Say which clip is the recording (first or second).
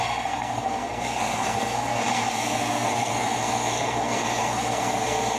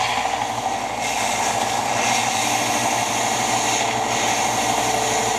second